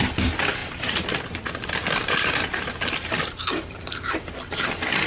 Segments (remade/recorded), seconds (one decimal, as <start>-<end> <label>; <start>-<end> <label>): 0.0-0.6 recorded; 0.6-3.5 remade; 3.5-5.1 recorded